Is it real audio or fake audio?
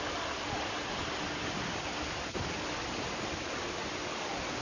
real